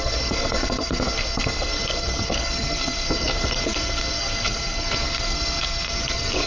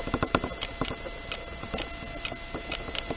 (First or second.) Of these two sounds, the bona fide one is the second